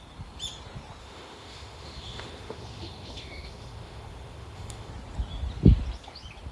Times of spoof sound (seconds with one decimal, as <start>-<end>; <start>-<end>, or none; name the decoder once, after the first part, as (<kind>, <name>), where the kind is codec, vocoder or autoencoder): 1.0-4.9 (autoencoder, DAC-VAE)